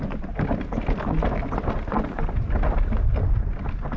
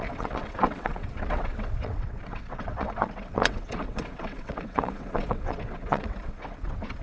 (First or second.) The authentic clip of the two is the first